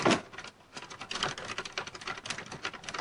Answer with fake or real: real